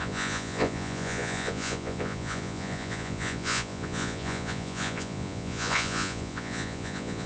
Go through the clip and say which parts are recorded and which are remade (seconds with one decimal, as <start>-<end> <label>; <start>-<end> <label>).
0.0-7.3 remade